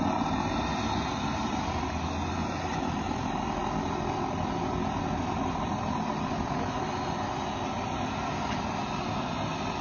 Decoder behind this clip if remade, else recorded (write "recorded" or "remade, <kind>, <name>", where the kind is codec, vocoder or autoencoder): recorded